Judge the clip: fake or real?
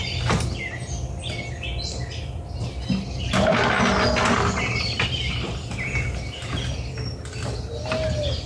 real